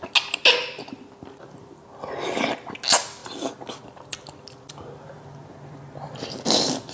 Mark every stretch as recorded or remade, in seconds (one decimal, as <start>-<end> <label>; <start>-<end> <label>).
0.0-6.9 recorded